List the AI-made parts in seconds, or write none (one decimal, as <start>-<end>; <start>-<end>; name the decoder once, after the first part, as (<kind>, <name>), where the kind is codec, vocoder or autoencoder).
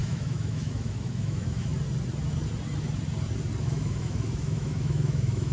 0.0-1.7 (autoencoder, DAC-VAE); 3.6-5.5